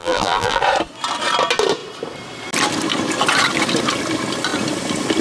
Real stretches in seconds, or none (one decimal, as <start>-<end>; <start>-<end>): 0.6-5.2